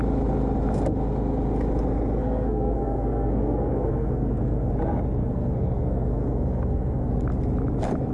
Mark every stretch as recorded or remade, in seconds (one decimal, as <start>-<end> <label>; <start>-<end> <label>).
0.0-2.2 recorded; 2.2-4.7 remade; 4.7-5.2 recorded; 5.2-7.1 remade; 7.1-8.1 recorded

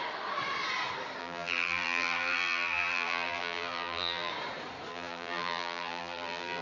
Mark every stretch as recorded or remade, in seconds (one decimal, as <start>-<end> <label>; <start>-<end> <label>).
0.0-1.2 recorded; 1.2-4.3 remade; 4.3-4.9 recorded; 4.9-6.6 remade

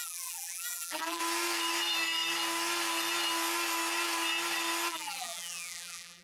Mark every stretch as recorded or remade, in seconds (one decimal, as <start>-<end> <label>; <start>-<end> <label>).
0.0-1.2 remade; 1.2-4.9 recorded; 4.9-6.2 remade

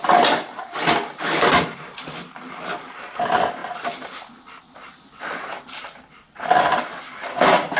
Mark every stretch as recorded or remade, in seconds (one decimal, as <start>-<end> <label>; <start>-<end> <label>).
0.0-7.8 remade